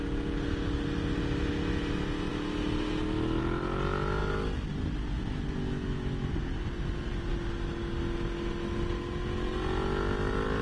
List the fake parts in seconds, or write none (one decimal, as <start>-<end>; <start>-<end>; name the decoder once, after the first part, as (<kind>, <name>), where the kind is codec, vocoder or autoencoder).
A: none